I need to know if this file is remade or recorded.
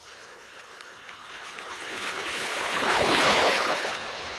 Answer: remade